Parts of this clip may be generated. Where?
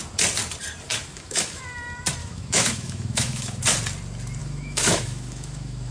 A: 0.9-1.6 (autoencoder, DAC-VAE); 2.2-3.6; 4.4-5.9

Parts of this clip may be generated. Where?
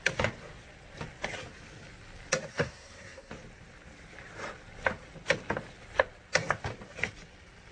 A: 2.5-3.3 (codec, SNAC)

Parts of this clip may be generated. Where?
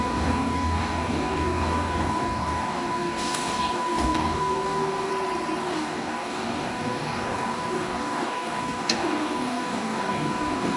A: 0.0-5.1 (codec, DAC); 5.6-10.8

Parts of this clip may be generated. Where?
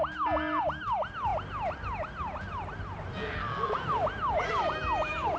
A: none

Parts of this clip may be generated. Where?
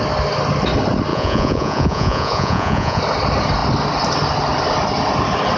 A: 1.1-3.0 (vocoder, Vocos)